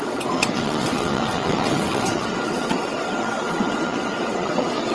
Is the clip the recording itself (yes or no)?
no